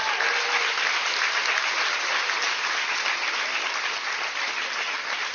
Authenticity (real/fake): real